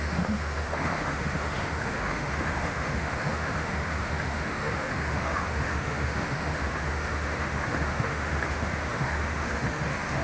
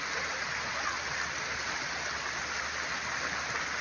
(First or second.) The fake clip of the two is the first